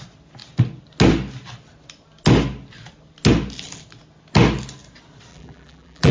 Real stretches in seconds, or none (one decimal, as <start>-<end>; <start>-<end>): 0.0-5.3